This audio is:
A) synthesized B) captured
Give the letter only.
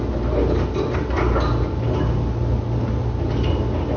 B